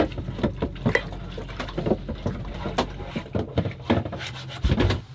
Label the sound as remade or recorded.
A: recorded